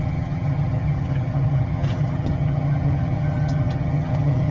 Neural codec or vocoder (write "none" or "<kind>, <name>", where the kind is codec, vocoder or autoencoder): vocoder, HiFi-GAN